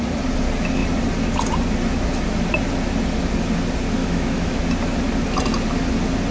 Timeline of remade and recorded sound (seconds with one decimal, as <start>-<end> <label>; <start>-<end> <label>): 0.0-4.0 recorded; 4.0-4.6 remade; 4.6-6.3 recorded